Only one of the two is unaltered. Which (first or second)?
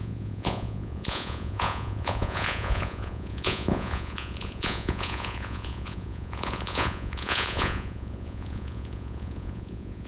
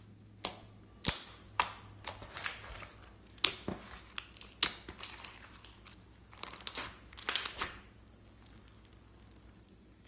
second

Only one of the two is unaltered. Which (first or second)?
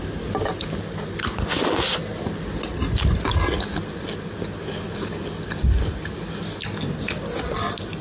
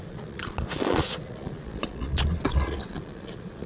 first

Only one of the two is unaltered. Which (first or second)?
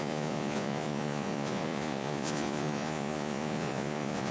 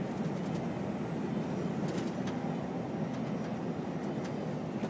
second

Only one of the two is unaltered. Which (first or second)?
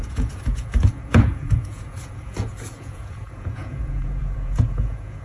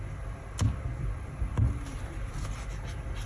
second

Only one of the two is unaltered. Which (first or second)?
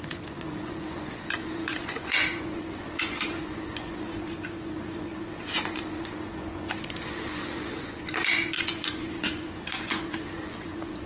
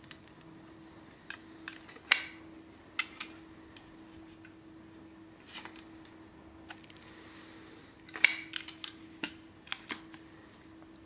second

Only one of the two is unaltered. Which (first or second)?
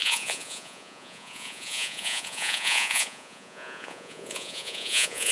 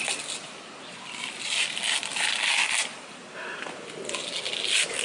second